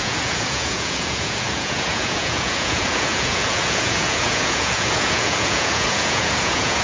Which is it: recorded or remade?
remade